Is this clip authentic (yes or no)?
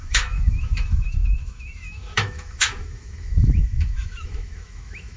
no